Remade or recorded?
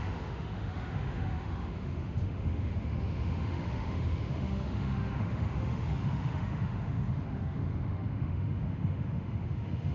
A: remade